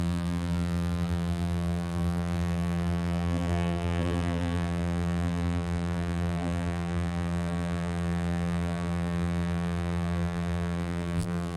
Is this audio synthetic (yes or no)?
yes